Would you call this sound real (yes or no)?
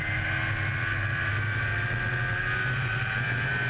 yes